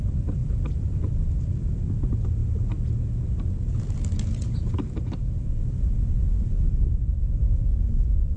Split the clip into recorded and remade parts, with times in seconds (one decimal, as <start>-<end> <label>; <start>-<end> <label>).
0.0-8.4 recorded